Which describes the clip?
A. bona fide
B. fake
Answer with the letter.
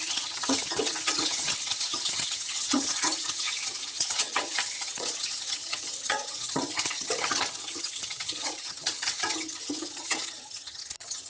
B